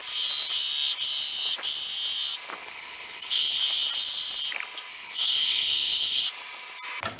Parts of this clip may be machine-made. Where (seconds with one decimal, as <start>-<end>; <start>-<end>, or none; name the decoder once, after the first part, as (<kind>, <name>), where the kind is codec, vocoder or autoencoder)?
2.6-3.6 (codec, HILCodec); 4.9-6.2